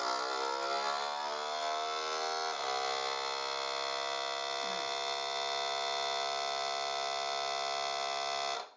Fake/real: real